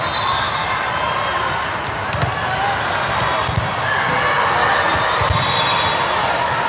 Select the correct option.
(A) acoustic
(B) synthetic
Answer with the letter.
A